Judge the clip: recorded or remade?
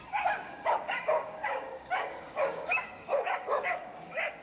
remade